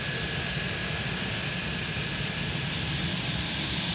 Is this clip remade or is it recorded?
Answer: remade